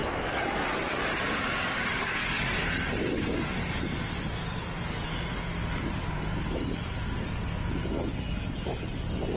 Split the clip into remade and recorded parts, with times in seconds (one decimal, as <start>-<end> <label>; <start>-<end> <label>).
0.0-9.4 recorded